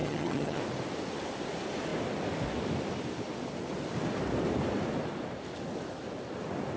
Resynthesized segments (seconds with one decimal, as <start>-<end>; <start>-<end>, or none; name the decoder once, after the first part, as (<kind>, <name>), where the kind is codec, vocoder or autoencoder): 0.0-0.6 (vocoder, HiFi-GAN)